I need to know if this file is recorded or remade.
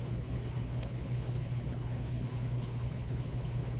remade